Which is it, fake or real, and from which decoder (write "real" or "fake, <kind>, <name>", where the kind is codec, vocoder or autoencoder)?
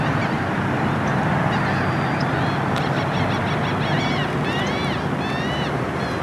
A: real